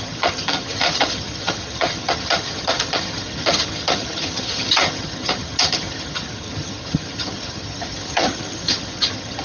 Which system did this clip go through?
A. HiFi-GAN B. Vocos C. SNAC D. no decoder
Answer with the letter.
A